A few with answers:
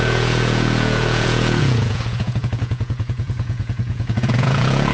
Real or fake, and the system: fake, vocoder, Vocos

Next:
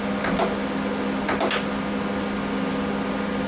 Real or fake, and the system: real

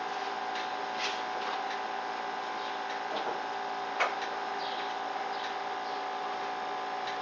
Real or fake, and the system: real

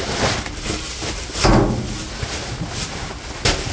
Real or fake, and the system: real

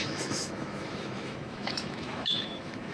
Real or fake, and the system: fake, autoencoder, DAC-VAE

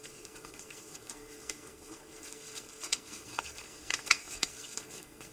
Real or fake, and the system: fake, codec, SNAC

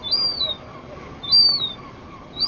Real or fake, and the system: real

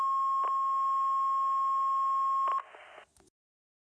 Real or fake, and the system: real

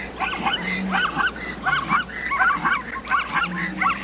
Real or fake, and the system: real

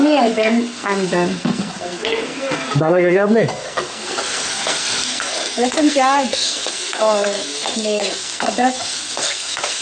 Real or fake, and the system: fake, codec, SNAC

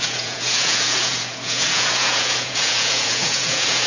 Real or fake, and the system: fake, vocoder, Vocos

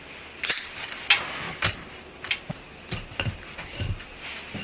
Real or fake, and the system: real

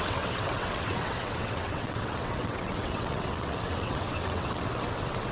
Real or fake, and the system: fake, vocoder, WaveNeXt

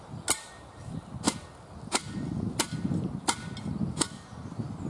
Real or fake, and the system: real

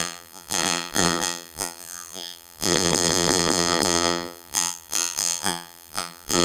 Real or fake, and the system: fake, vocoder, BigVGAN v2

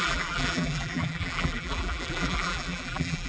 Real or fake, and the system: fake, vocoder, BigVGAN v2